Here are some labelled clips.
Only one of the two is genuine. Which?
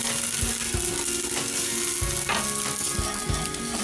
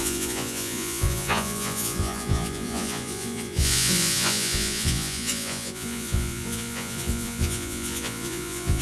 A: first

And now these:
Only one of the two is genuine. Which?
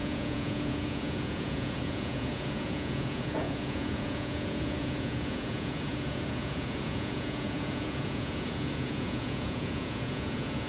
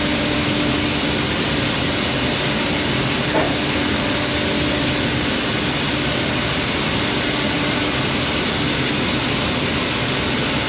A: second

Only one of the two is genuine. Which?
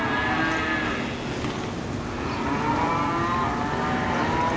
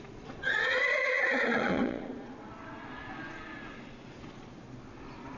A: first